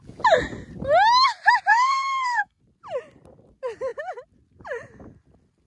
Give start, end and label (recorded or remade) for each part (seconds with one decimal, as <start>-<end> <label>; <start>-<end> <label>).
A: 0.0-1.7 recorded; 1.7-2.6 remade; 2.6-5.7 recorded